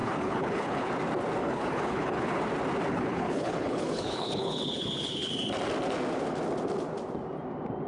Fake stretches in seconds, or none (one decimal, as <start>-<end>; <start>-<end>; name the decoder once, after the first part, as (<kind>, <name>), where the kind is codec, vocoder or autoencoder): 0.0-0.9 (codec, HILCodec); 1.4-2.4; 2.9-5.3